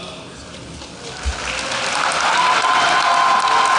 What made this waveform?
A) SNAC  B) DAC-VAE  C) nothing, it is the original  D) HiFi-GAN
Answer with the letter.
C